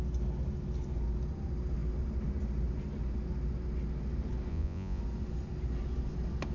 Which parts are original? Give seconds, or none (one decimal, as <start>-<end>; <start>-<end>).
0.0-4.5; 5.0-6.5

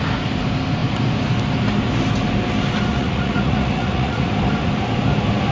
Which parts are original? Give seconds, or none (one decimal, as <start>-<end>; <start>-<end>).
0.0-2.9; 4.3-5.5

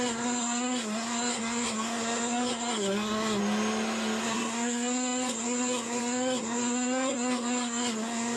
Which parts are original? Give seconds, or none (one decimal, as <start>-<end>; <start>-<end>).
3.4-4.2